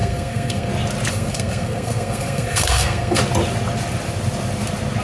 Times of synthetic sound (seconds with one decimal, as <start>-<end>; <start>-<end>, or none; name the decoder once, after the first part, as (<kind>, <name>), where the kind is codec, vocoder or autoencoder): 0.0-0.7 (codec, SNAC); 1.1-3.2